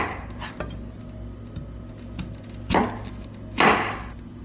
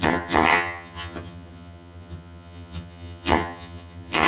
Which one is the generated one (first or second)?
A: second